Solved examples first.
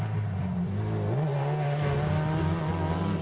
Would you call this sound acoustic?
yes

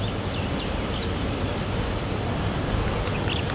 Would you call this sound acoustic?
yes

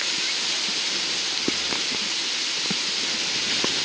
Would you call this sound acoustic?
yes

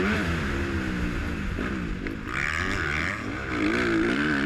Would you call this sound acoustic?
yes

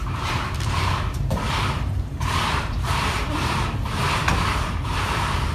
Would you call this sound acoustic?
no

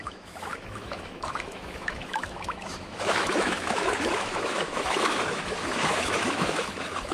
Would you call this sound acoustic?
no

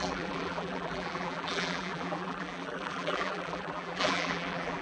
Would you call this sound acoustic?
no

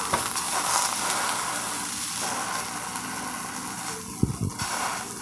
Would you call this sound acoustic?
yes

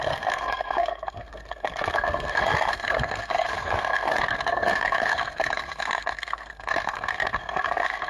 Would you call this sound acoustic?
no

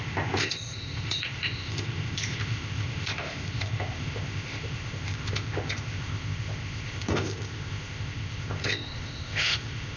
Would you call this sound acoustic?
no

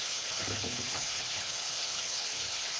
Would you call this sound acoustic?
no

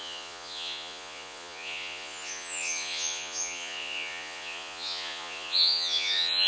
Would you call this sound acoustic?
no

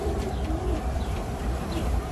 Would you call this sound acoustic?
no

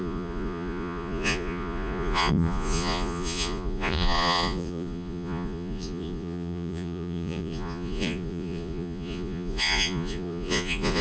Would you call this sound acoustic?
no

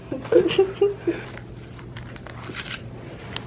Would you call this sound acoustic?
yes